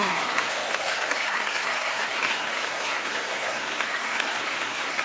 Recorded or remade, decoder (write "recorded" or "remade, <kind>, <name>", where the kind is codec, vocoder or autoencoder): remade, codec, SNAC